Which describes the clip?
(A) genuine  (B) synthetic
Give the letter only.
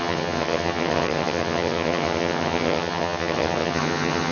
B